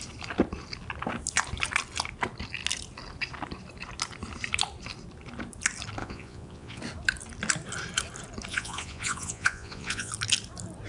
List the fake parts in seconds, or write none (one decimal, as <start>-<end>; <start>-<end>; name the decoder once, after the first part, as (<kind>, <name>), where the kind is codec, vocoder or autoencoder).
6.0-6.8 (vocoder, Vocos); 8.5-10.1